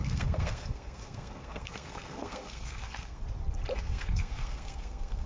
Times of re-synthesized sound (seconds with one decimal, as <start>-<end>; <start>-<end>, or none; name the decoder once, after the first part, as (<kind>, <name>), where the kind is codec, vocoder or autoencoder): 0.0-3.2 (codec, SNAC); 3.7-5.3